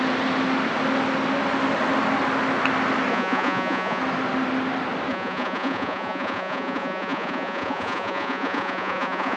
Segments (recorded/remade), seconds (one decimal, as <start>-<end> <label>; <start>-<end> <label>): 0.0-3.1 recorded; 3.1-4.0 remade; 4.0-5.1 recorded; 5.1-9.4 remade